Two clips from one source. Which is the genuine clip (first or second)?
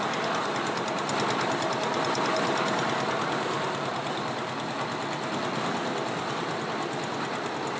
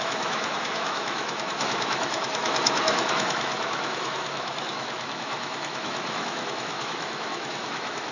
first